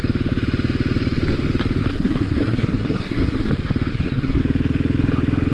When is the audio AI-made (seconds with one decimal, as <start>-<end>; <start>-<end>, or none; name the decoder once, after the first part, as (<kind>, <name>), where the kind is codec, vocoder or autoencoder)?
1.9-3.5 (codec, SNAC); 3.9-4.4